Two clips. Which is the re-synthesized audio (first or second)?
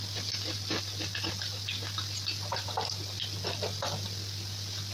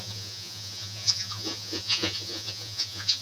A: second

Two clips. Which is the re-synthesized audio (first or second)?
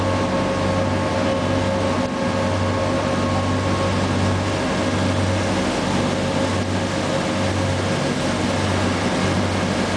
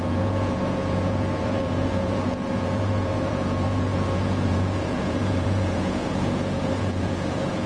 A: second